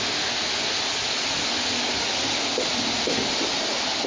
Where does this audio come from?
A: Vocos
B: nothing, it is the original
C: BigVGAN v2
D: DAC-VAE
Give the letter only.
B